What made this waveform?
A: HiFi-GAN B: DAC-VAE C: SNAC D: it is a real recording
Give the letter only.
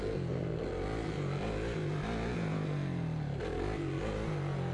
D